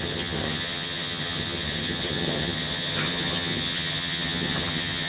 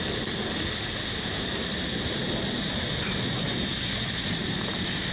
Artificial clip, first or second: first